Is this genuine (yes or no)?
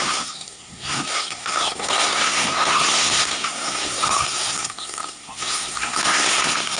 no